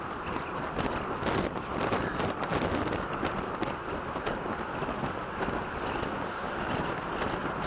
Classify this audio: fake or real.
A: real